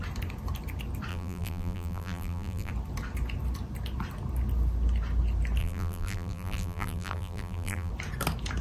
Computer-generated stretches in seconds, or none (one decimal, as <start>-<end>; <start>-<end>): 1.1-2.7; 5.6-7.9